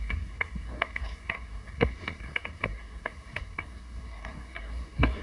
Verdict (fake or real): fake